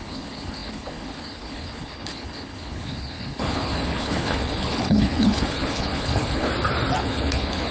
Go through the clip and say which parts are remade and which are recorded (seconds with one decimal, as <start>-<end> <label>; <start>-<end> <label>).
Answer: 0.0-6.5 remade; 6.5-7.0 recorded; 7.0-7.7 remade